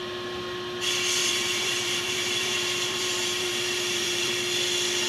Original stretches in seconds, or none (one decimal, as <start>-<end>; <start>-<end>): 0.0-1.2; 4.3-5.1